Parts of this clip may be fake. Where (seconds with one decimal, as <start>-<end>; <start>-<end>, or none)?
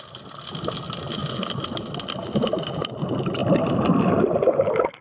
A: none